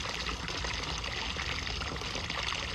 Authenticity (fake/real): real